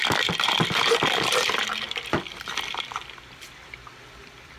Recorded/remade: remade